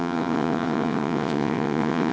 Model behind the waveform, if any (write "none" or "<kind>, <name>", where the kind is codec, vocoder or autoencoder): vocoder, WaveNeXt